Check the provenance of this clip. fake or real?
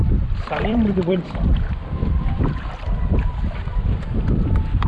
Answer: fake